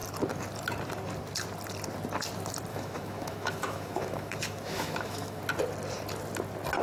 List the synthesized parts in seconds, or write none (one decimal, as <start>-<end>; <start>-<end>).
2.7-5.4